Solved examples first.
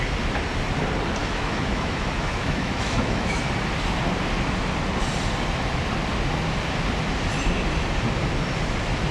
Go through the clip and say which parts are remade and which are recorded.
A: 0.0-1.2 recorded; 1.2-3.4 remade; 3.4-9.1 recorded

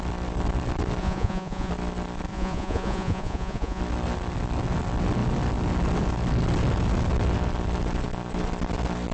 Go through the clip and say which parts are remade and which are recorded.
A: 0.0-1.0 recorded; 1.0-1.7 remade; 1.7-2.3 recorded; 2.3-3.8 remade; 3.8-9.1 recorded

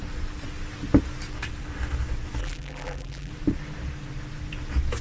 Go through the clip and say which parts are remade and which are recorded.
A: 0.0-2.4 recorded; 2.4-3.3 remade; 3.3-5.0 recorded